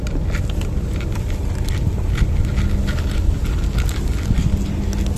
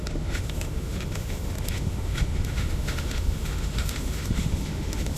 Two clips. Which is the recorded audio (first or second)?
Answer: first